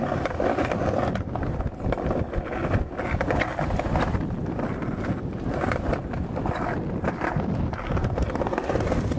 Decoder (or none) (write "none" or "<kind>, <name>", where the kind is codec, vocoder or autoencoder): none